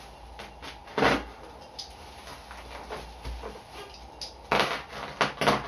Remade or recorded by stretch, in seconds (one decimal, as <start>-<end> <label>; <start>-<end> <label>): 0.0-5.7 recorded